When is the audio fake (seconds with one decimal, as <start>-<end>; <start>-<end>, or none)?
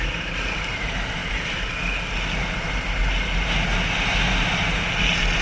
none